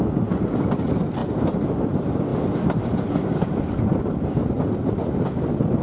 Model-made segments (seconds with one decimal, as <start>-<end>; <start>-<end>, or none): none